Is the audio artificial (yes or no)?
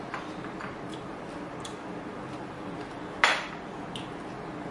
no